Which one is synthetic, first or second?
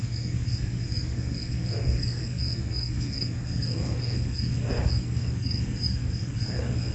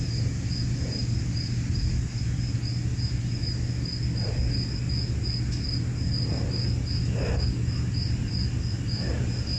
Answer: first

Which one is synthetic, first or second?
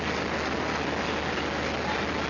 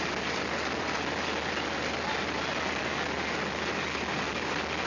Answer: second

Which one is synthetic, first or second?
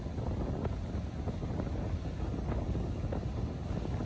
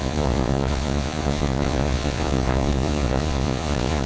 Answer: second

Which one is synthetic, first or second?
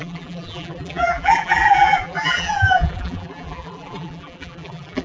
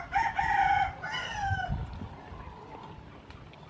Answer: first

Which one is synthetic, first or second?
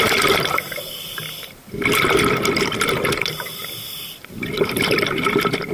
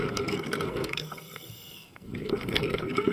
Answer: second